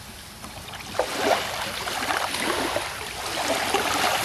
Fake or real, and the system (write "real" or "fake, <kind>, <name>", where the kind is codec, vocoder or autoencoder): real